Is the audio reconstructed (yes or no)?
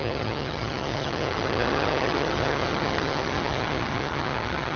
yes